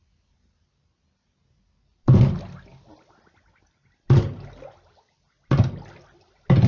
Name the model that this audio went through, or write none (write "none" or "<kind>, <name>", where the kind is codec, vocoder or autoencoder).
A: none